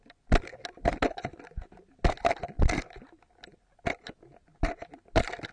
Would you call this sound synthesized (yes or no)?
no